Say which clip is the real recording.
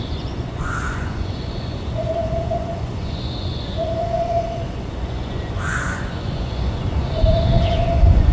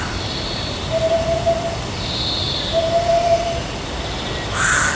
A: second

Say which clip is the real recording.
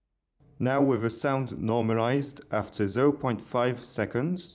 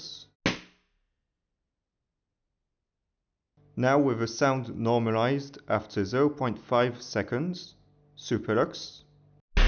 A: second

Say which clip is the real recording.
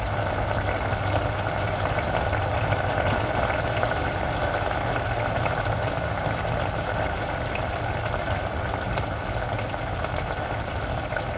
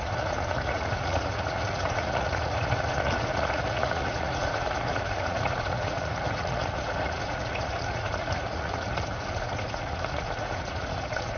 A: first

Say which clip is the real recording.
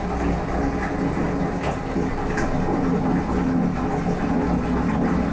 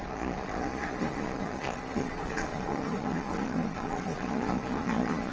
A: first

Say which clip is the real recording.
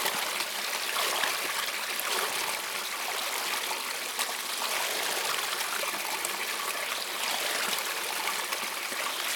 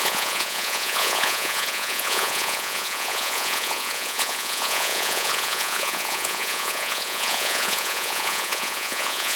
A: first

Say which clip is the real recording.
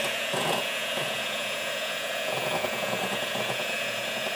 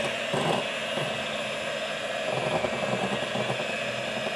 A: second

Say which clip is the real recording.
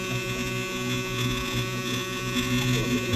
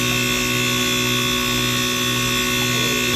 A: second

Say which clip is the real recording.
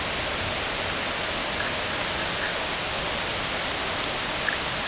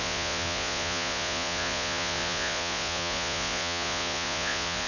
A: first